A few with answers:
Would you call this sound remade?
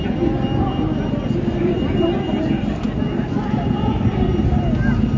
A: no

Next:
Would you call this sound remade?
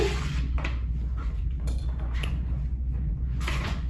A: yes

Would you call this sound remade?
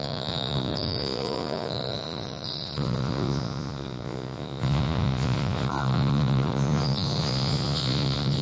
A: yes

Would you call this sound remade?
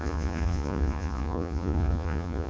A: yes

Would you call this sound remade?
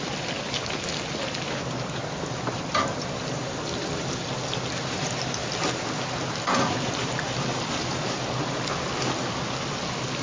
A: no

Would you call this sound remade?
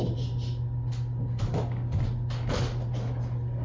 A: no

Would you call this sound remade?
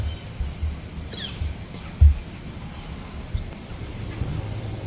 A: no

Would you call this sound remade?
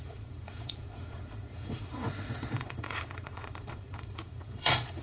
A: yes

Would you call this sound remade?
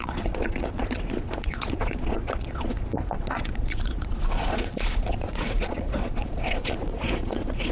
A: yes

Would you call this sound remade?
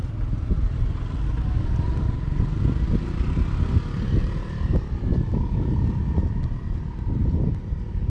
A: no